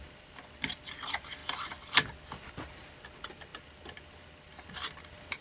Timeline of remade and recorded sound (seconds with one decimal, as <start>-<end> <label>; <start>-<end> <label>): 0.0-5.4 recorded